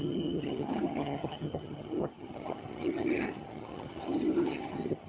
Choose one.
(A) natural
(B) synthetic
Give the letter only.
B